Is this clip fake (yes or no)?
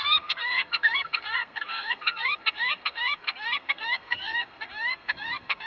yes